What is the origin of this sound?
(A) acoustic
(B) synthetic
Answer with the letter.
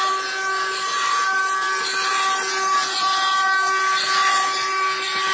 A